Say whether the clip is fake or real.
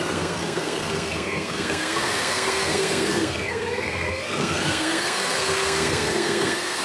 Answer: fake